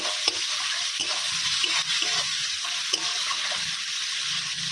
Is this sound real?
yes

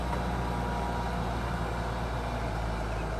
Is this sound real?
yes